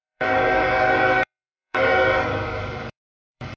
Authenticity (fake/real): fake